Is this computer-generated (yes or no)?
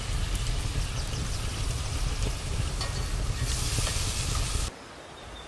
no